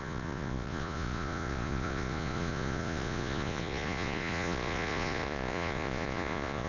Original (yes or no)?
no